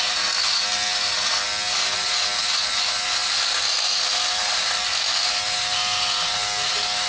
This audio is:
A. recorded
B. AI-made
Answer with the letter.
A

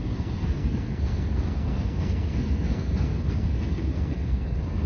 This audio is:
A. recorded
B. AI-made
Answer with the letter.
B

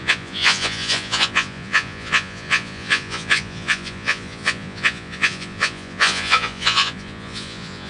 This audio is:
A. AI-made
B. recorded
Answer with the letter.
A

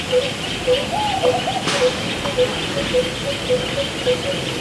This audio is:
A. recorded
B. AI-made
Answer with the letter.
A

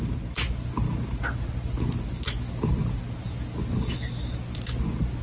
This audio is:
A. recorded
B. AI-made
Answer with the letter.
A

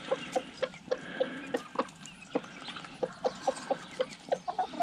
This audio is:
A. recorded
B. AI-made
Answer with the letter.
A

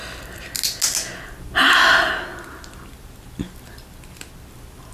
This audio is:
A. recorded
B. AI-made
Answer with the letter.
A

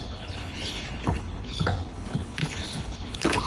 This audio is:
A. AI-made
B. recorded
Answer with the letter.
A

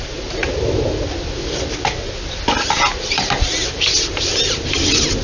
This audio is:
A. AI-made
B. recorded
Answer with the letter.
B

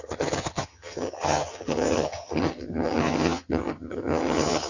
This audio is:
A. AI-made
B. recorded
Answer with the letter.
A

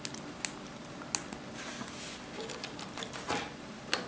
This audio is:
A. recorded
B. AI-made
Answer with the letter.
A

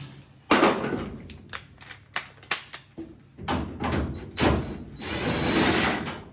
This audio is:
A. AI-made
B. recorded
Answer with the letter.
B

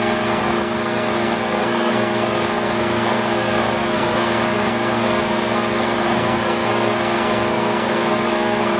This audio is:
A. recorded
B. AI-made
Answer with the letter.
B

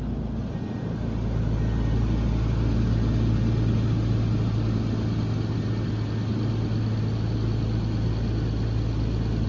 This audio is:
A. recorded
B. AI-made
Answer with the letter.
A